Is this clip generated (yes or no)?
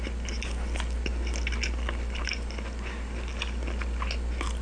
no